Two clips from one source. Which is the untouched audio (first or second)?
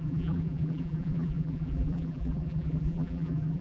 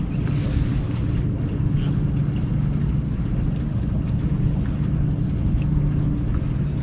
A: second